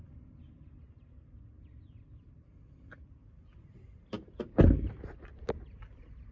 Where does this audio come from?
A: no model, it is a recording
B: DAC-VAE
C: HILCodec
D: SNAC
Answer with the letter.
A